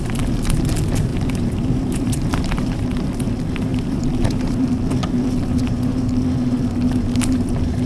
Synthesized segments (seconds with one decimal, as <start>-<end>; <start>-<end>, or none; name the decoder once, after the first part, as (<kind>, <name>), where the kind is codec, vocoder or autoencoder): 1.1-3.2 (vocoder, BigVGAN v2); 3.7-4.8